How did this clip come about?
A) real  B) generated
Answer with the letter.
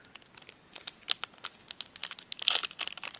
A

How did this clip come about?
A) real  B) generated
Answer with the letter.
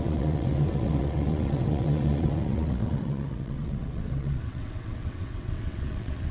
B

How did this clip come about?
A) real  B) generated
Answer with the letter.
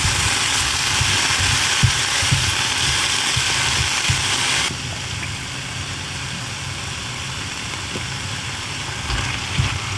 A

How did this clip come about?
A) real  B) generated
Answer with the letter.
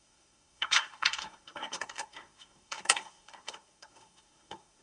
B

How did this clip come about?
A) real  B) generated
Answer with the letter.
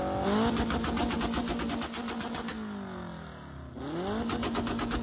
A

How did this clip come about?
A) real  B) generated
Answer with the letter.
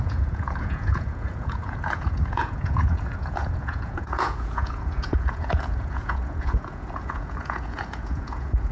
B